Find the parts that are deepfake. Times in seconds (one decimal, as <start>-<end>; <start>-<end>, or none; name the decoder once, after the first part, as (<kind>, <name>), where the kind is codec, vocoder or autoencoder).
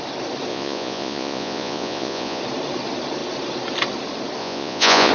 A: 0.5-2.4 (vocoder, Vocos); 4.4-5.1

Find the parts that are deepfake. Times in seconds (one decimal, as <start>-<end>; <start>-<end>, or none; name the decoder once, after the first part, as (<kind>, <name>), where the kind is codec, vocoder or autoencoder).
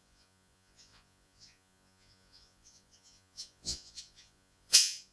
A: 0.0-5.1 (vocoder, Vocos)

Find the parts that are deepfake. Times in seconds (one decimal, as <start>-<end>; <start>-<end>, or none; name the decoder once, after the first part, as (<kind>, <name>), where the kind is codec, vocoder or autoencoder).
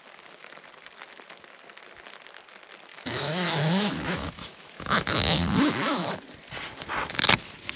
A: 2.9-6.2 (autoencoder, DAC-VAE)